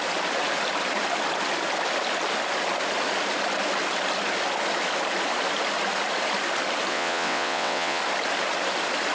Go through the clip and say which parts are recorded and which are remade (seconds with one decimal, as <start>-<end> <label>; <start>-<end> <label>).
0.0-6.9 recorded; 6.9-8.0 remade; 8.0-9.1 recorded